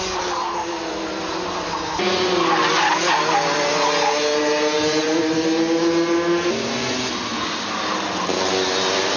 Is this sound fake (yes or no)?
no